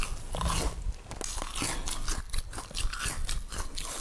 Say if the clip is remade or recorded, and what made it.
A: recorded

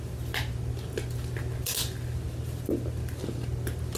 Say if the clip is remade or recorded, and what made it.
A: recorded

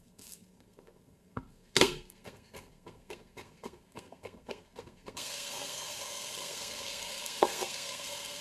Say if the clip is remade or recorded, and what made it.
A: remade, codec, SNAC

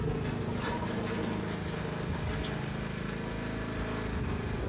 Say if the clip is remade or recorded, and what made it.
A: recorded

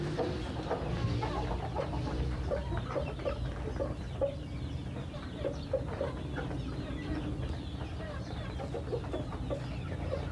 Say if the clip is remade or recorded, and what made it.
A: recorded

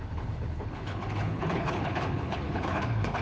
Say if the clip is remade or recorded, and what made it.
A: remade, codec, HILCodec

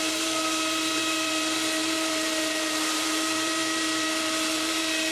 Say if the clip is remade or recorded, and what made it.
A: remade, vocoder, BigVGAN v2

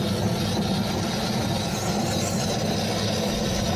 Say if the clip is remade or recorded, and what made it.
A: recorded